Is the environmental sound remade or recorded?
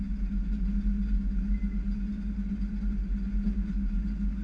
recorded